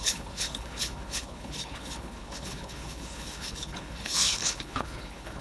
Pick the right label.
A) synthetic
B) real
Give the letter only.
A